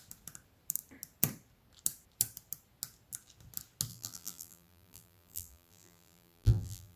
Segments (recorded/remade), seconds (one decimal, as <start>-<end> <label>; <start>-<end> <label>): 0.0-3.9 recorded; 3.9-7.0 remade